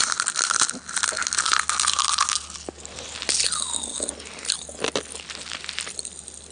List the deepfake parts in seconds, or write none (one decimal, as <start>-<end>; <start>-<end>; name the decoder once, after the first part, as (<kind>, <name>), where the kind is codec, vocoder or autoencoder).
none